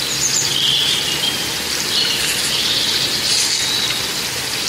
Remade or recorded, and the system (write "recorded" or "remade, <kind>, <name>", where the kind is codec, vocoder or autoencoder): recorded